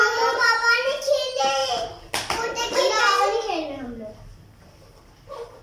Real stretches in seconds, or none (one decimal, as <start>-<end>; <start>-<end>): 0.0-5.6